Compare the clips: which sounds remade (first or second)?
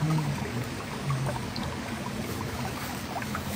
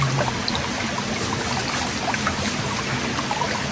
first